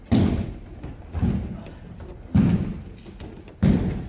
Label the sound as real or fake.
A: real